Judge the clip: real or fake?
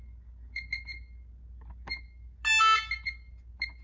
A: real